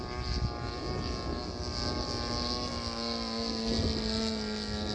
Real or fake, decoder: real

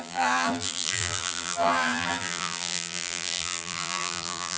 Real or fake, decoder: fake, vocoder, BigVGAN v2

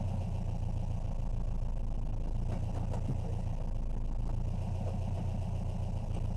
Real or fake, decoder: real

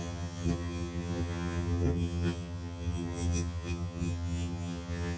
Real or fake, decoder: fake, vocoder, HiFi-GAN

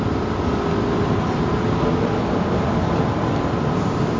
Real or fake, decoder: real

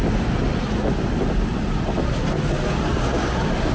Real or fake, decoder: real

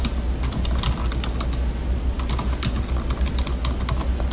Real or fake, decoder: real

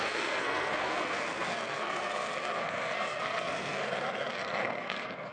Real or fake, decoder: fake, codec, SNAC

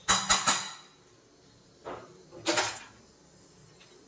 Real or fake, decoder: real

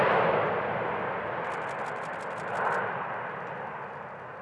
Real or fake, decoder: real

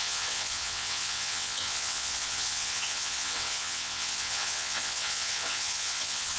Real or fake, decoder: fake, vocoder, WaveNeXt